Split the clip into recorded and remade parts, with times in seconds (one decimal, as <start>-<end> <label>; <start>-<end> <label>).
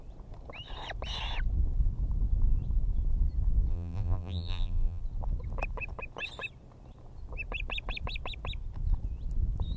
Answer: 0.0-3.7 recorded; 3.7-5.0 remade; 5.0-9.8 recorded